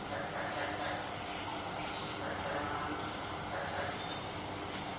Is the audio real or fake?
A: real